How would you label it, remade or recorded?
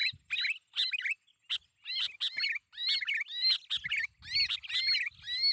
recorded